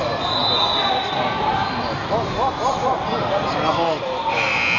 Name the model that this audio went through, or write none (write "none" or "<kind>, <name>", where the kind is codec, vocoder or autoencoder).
none